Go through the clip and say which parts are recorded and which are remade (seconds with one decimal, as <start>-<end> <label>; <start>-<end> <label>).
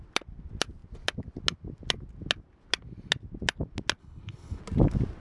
0.0-4.0 recorded; 4.0-4.6 remade; 4.6-5.2 recorded